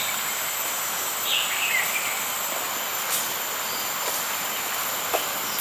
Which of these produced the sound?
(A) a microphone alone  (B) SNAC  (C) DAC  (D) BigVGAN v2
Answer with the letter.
A